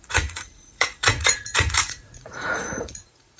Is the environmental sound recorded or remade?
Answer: remade